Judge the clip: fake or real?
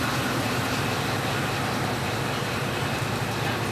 real